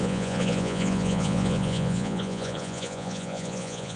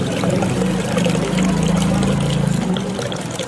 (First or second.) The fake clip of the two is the first